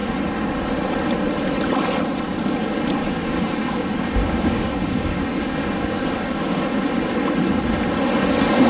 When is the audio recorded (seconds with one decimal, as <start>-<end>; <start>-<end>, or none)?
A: 0.0-3.0; 6.6-8.7